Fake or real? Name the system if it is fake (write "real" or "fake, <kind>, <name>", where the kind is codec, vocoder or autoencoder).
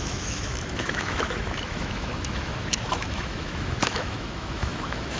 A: fake, autoencoder, DAC-VAE